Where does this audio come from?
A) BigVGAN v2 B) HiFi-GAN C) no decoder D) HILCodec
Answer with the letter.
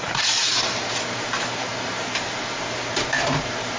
A